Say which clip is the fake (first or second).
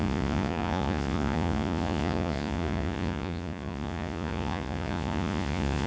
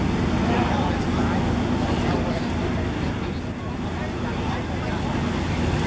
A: first